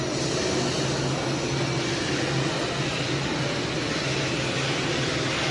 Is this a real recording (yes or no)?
yes